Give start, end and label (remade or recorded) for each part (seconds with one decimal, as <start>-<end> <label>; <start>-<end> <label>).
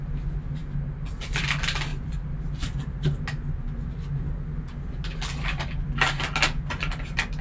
0.0-1.9 recorded; 1.9-2.9 remade; 2.9-7.4 recorded